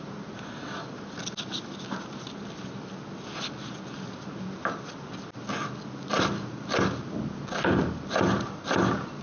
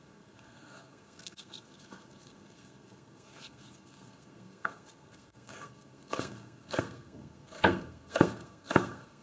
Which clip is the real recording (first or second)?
first